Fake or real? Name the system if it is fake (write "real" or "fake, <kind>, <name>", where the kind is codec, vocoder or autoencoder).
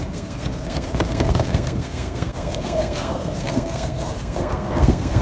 fake, codec, SNAC